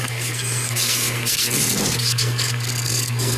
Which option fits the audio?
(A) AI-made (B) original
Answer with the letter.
A